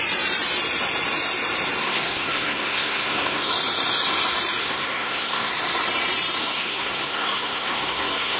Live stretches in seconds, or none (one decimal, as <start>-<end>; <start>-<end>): 0.0-1.8; 3.5-4.6; 5.5-6.4